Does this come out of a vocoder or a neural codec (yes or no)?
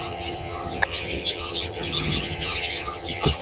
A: yes